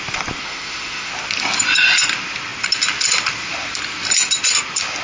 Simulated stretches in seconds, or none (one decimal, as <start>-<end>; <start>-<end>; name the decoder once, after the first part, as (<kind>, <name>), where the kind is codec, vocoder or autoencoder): 0.4-1.1 (autoencoder, DAC-VAE)